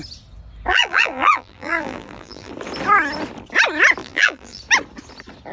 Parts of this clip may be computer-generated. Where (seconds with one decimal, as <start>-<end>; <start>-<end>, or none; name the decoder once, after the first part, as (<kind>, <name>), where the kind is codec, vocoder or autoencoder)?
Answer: 0.7-2.5 (vocoder, BigVGAN v2); 4.0-4.6